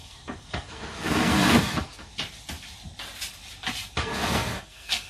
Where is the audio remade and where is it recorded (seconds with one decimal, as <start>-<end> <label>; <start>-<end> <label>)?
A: 0.0-2.1 remade; 2.1-4.0 recorded; 4.0-5.1 remade